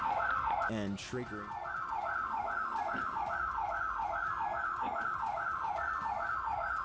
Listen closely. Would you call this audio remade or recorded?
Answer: recorded